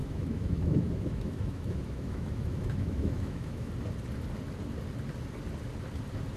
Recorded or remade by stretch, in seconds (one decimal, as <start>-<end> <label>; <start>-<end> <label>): 0.0-3.7 remade; 3.7-6.4 recorded